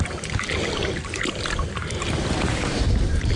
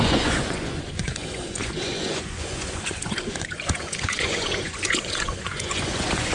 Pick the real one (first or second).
first